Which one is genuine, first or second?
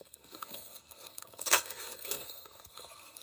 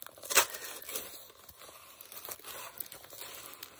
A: second